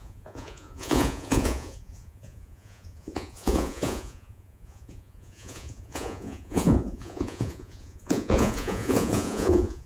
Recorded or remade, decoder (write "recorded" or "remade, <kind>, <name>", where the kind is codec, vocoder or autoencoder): remade, vocoder, Vocos